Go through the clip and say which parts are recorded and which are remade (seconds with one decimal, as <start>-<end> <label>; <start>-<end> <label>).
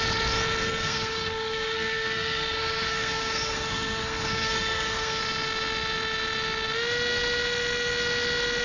0.0-0.6 recorded; 0.6-5.2 remade; 5.2-8.6 recorded